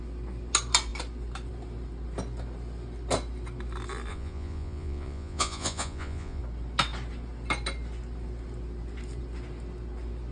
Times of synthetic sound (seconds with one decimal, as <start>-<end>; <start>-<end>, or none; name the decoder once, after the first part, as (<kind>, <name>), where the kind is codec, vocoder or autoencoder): 4.1-6.4 (vocoder, Vocos)